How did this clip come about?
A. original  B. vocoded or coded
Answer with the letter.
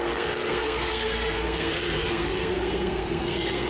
B